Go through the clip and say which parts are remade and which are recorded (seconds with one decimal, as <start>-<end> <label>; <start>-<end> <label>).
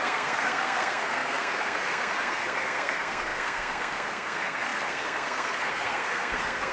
0.0-6.7 remade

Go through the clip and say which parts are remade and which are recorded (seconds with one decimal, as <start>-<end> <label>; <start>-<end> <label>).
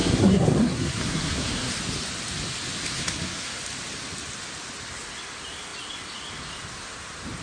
0.0-1.7 remade; 1.7-3.0 recorded; 3.0-3.6 remade; 3.6-7.4 recorded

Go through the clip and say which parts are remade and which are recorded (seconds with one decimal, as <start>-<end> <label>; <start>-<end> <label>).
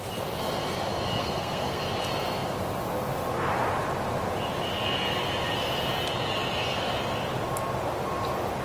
0.0-1.2 recorded; 1.2-1.8 remade; 1.8-8.6 recorded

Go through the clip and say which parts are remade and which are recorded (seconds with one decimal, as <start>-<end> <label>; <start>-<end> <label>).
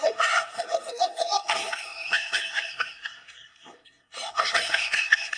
0.0-5.4 remade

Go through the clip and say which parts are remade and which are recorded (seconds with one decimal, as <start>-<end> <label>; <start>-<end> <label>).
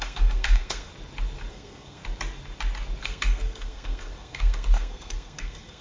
0.0-0.9 remade; 0.9-1.5 recorded; 1.5-2.0 remade; 2.0-3.0 recorded; 3.0-5.8 remade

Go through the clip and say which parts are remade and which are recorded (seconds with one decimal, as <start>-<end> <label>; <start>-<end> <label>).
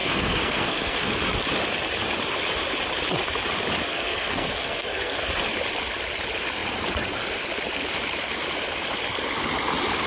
0.0-1.1 remade; 1.1-3.9 recorded; 3.9-5.2 remade; 5.2-10.1 recorded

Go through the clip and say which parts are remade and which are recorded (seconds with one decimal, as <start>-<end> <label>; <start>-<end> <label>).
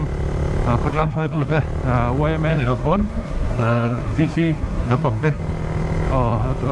0.0-0.9 recorded; 0.9-1.6 remade; 1.6-2.5 recorded; 2.5-5.4 remade; 5.4-6.7 recorded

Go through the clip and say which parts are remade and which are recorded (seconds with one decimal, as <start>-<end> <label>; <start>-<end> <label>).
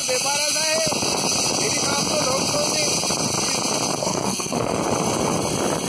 0.0-4.0 recorded; 4.0-4.8 remade; 4.8-5.9 recorded